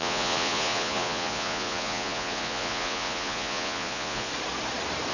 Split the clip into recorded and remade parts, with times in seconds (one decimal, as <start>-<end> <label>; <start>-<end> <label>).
0.0-4.3 remade; 4.3-5.1 recorded

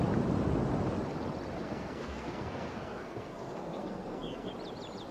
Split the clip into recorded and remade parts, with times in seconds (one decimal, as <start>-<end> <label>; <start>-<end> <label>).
0.0-1.6 recorded; 1.6-4.5 remade; 4.5-5.1 recorded